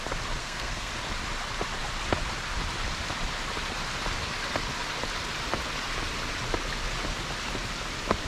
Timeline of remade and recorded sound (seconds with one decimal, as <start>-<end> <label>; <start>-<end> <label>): 0.0-0.4 recorded; 0.4-0.9 remade; 0.9-8.3 recorded